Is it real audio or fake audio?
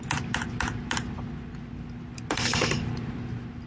real